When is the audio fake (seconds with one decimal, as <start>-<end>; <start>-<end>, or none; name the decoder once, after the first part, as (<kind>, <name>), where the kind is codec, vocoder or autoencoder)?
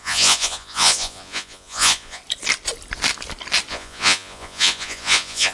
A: 0.0-2.2 (vocoder, Vocos); 3.7-5.5